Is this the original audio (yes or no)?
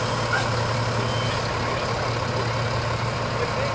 yes